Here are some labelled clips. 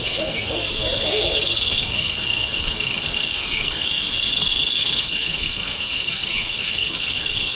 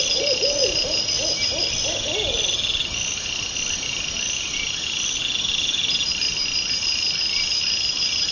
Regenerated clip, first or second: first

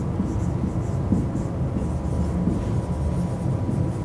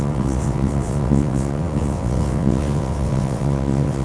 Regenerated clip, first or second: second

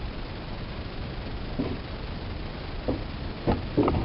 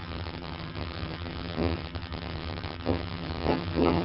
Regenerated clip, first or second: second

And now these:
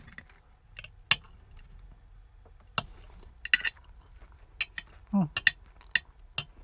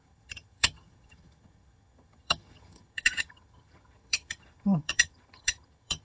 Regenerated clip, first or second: second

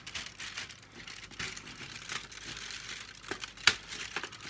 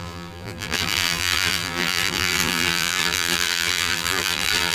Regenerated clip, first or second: second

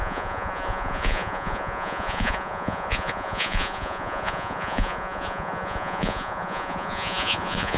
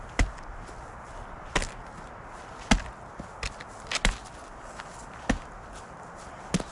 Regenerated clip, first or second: first